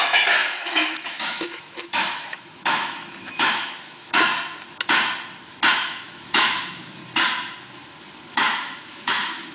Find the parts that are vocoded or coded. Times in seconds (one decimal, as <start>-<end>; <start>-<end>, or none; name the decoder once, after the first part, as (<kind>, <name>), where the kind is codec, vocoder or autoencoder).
0.0-4.3 (autoencoder, DAC-VAE); 5.7-7.0; 8.3-9.5

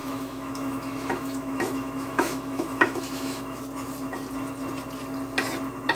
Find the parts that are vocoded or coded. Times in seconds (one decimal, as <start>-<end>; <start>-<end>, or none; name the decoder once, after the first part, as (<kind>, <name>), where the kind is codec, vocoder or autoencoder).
0.0-3.6 (autoencoder, DAC-VAE)

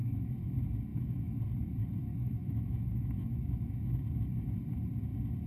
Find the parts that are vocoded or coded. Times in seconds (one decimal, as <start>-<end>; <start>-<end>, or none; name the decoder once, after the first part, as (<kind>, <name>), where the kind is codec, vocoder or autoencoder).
0.0-0.5 (autoencoder, DAC-VAE); 0.9-1.4; 1.8-4.0

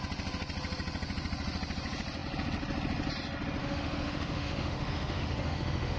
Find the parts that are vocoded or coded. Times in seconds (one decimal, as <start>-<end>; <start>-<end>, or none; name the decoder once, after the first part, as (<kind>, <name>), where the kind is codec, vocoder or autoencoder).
3.6-6.0 (autoencoder, DAC-VAE)

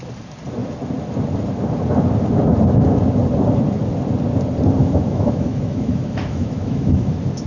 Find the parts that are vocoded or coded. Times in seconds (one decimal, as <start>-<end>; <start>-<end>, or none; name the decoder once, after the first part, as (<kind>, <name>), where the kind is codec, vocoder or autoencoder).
4.8-7.1 (autoencoder, DAC-VAE)

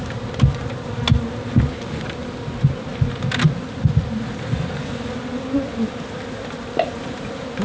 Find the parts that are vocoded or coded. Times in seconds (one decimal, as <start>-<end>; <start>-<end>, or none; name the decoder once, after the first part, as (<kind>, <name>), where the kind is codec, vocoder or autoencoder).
none

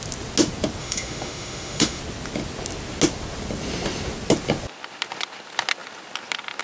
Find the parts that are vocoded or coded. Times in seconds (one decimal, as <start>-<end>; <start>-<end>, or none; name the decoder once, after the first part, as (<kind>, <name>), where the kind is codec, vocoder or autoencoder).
0.8-2.0 (autoencoder, DAC-VAE)

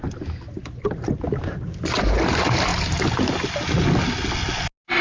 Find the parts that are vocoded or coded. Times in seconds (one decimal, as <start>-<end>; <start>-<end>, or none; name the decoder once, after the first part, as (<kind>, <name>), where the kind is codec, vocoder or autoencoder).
none